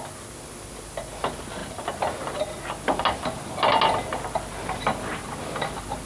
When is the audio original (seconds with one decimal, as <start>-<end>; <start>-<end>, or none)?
0.0-6.1